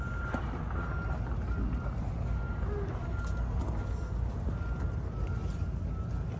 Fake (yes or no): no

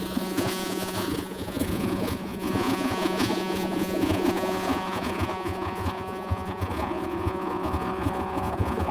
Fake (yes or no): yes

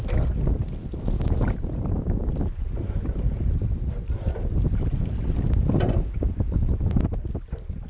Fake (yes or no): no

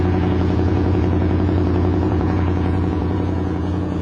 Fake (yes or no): yes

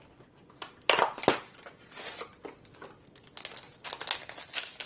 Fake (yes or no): no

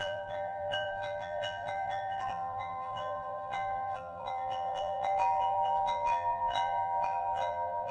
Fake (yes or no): yes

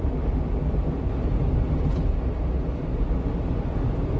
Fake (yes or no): no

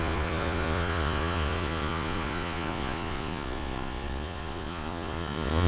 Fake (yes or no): yes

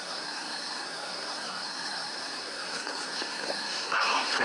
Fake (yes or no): yes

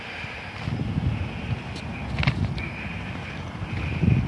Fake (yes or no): no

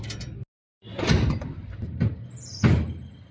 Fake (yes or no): no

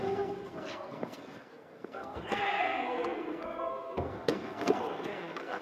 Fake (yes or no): yes